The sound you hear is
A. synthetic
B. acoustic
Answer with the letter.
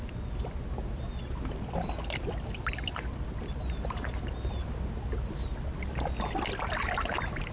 B